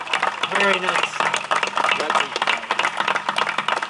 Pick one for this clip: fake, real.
real